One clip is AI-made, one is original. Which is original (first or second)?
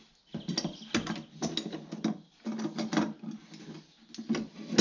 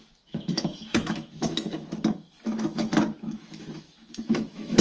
first